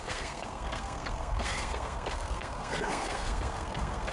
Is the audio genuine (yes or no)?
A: no